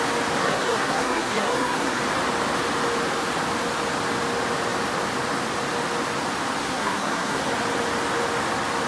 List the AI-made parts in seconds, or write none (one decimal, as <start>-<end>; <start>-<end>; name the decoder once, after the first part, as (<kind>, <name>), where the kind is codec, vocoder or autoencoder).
0.4-2.0 (codec, SNAC); 6.6-7.4